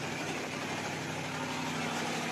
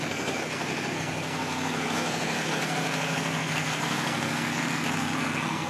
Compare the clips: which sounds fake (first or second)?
second